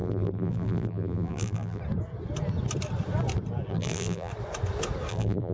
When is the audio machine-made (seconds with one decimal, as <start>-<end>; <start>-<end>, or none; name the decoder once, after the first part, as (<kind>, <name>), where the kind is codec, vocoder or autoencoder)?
0.0-1.8 (vocoder, BigVGAN v2); 3.7-4.3; 5.1-5.5